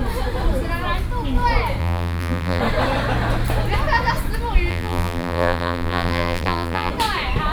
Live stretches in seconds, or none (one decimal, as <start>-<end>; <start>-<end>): 0.0-1.8; 2.6-4.7; 6.9-7.5